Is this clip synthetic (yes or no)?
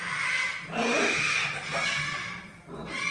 no